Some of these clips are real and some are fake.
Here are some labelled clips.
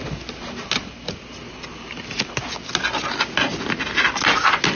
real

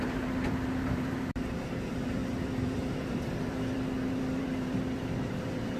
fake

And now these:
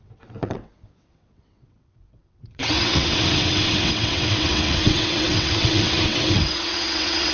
fake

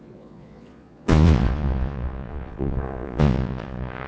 fake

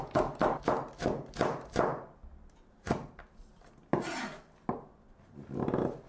real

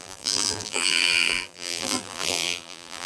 fake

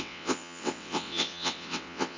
fake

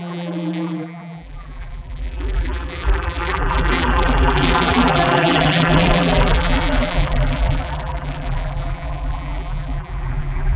fake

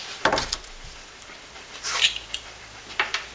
fake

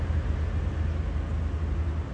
real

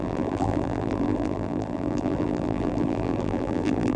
fake